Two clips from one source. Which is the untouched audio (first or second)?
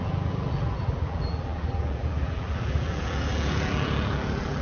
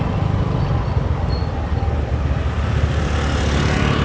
second